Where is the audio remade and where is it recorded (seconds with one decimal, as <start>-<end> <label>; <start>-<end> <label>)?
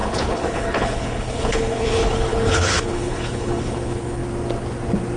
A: 0.0-4.2 remade; 4.2-5.2 recorded